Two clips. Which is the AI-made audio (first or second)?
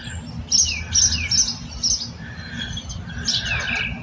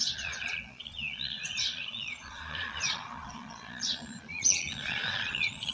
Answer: second